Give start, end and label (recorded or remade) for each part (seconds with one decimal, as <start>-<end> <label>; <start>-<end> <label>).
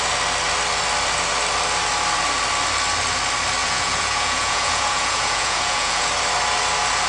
0.0-3.6 recorded; 3.6-6.1 remade; 6.1-7.1 recorded